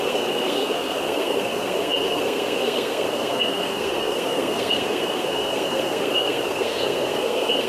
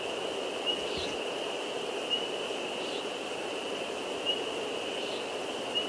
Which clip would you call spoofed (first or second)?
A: first